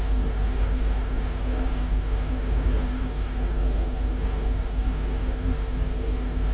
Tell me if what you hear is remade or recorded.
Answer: remade